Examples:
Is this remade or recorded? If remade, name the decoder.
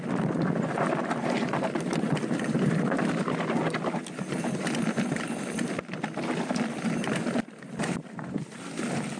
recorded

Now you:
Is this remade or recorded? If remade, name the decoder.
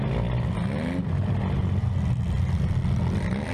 recorded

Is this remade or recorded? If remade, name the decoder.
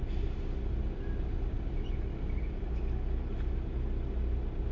recorded